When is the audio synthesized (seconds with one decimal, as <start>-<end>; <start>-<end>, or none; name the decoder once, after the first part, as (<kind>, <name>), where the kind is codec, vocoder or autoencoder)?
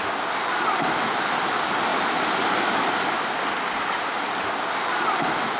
none